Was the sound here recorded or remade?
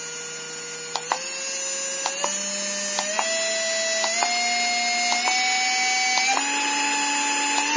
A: recorded